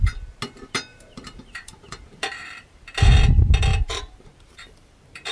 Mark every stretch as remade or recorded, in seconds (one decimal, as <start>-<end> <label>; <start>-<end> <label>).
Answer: 0.0-0.9 recorded; 0.9-2.9 remade; 2.9-3.7 recorded; 3.7-5.3 remade